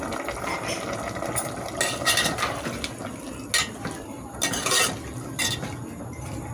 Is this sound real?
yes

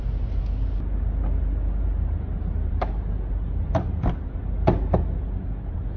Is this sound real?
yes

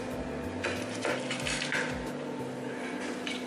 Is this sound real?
yes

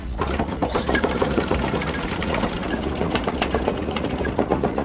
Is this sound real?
no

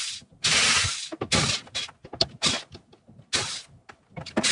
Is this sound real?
yes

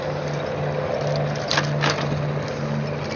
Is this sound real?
yes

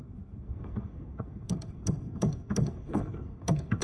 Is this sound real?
no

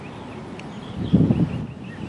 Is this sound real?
yes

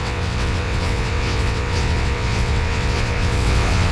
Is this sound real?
no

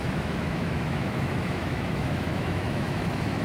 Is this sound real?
no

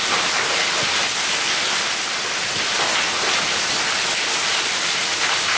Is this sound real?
yes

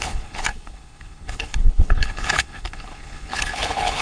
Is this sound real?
no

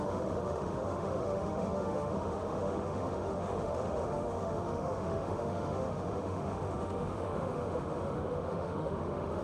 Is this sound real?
no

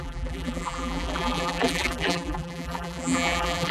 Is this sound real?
no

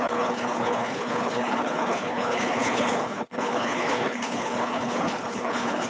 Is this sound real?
no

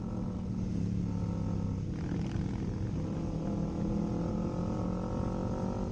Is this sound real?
yes